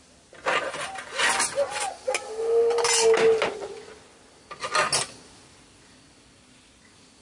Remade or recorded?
recorded